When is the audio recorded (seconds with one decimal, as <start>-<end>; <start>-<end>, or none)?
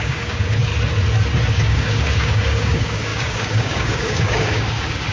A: 0.7-1.5